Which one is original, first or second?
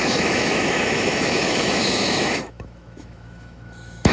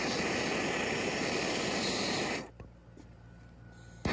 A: second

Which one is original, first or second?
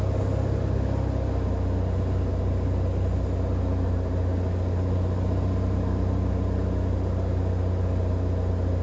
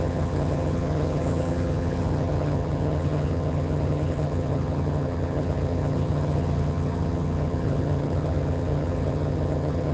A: first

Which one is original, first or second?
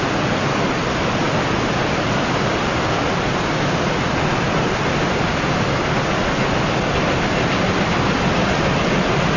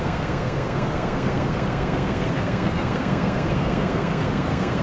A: first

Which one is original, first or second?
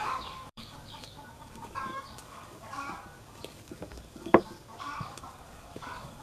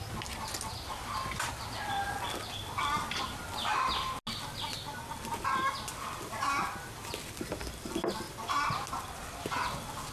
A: second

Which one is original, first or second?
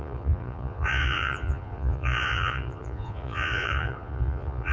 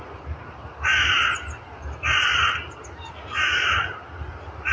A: second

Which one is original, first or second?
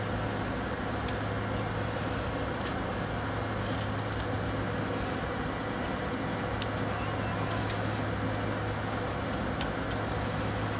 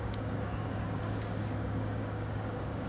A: first